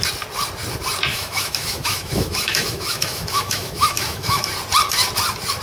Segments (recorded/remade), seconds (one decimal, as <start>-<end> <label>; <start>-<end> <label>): 0.0-1.1 recorded; 1.1-4.5 remade; 4.5-5.6 recorded